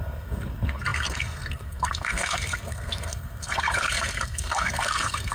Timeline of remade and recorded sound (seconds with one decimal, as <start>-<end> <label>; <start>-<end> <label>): 0.0-5.3 remade